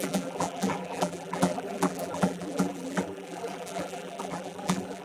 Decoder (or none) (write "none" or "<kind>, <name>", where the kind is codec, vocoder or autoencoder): vocoder, BigVGAN v2